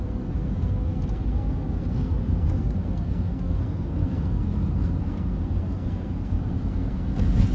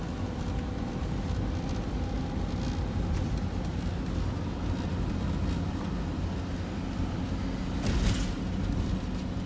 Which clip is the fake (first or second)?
first